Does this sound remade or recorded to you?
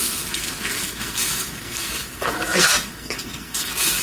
remade